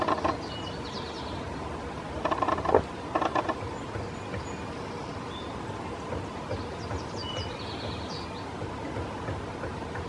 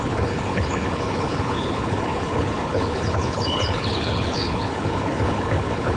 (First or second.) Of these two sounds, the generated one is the second